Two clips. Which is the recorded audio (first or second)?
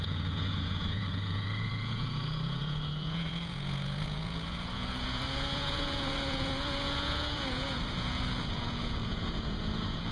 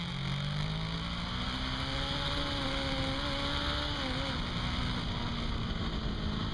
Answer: second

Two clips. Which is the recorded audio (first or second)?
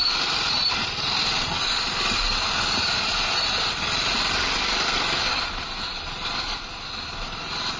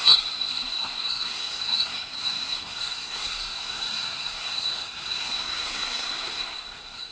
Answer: first